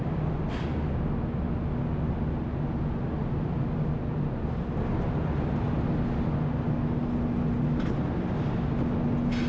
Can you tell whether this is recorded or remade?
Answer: recorded